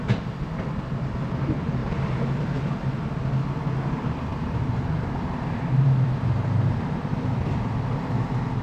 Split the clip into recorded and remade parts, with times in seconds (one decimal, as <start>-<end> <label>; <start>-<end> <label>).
0.0-1.8 recorded; 1.8-2.4 remade; 2.4-4.3 recorded; 4.3-4.9 remade; 4.9-8.6 recorded

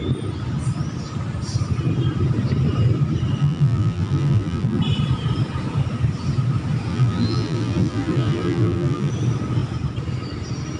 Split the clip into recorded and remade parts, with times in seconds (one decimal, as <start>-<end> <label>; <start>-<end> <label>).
0.0-3.4 recorded; 3.4-4.8 remade; 4.8-6.9 recorded; 6.9-9.1 remade; 9.1-10.8 recorded

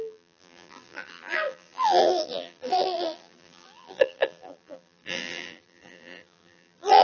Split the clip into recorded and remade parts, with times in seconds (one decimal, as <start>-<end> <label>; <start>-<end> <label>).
0.0-7.0 remade

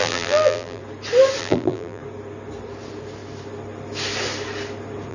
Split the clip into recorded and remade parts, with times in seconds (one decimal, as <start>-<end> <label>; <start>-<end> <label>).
0.0-0.8 remade; 0.8-1.4 recorded; 1.4-2.0 remade; 2.0-5.1 recorded

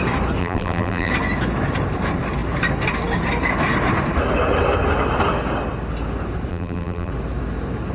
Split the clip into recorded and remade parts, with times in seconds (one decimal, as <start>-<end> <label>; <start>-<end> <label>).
0.0-0.4 recorded; 0.4-1.1 remade; 1.1-6.5 recorded; 6.5-7.1 remade; 7.1-7.9 recorded

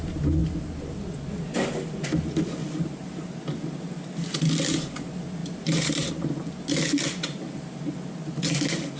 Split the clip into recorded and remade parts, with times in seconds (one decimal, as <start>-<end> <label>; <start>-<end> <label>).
0.0-2.6 recorded; 2.6-3.4 remade; 3.4-5.4 recorded; 5.4-6.1 remade; 6.1-9.0 recorded

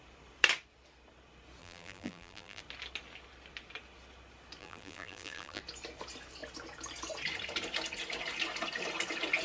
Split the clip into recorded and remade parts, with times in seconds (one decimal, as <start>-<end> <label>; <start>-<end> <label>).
0.0-1.6 recorded; 1.6-2.6 remade; 2.6-4.6 recorded; 4.6-5.6 remade; 5.6-9.4 recorded